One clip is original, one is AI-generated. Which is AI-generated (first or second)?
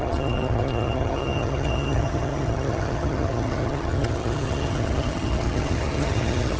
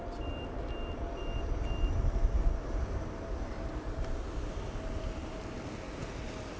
first